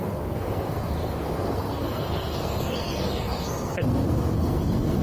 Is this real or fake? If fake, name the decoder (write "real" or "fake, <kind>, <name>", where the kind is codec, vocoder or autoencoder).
fake, codec, SNAC